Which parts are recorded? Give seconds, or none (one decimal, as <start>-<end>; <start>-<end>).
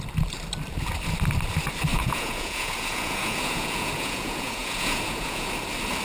0.0-1.9; 5.5-6.0